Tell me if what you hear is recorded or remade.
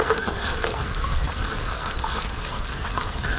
remade